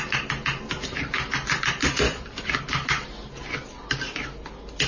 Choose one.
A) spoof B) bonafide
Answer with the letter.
B